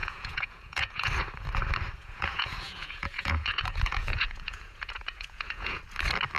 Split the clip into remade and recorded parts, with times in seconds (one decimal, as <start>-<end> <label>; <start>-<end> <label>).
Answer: 0.0-1.1 remade; 1.1-2.0 recorded; 2.0-5.8 remade; 5.8-6.4 recorded